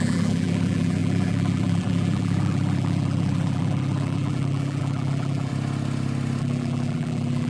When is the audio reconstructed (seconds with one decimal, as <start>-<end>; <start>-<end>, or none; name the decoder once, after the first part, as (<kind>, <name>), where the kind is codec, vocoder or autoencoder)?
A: 0.0-5.5 (vocoder, BigVGAN v2); 6.4-7.5